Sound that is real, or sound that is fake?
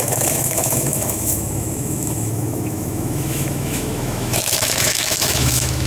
fake